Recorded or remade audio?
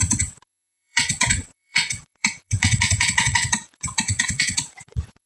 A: remade